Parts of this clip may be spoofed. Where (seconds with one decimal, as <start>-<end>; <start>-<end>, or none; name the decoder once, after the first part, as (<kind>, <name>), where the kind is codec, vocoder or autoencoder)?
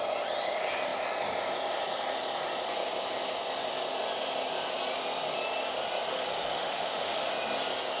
6.1-7.3 (autoencoder, DAC-VAE)